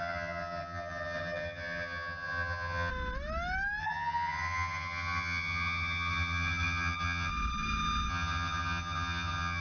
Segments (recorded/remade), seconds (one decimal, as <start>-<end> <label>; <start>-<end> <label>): 0.0-2.9 remade; 2.9-3.8 recorded; 3.8-7.3 remade; 7.3-8.1 recorded; 8.1-9.6 remade